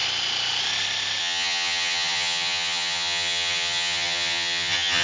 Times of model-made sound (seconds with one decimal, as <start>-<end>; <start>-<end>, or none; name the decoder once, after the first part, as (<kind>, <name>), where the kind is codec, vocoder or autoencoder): 1.2-5.0 (vocoder, HiFi-GAN)